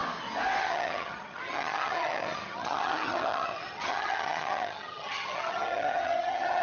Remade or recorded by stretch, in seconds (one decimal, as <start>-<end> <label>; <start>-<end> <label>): 0.0-0.6 recorded; 0.6-6.6 remade